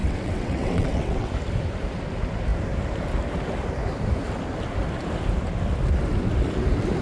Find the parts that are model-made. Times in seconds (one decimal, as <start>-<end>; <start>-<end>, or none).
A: 0.0-1.3